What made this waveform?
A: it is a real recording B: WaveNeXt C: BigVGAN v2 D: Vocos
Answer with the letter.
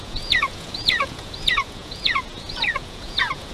D